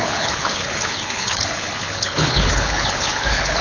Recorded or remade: remade